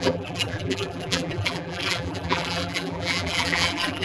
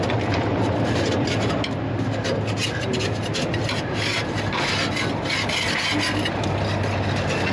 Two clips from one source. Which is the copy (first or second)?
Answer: first